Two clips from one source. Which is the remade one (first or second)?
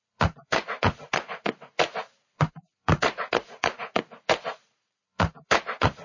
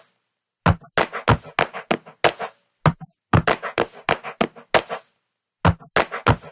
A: first